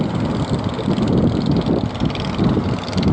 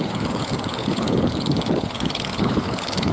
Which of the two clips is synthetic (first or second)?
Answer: second